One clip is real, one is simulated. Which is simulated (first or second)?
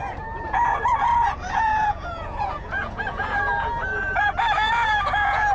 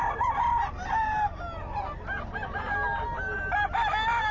first